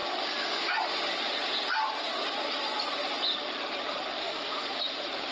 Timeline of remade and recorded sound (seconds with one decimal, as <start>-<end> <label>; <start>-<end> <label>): 0.0-4.2 recorded; 4.2-4.8 remade; 4.8-5.3 recorded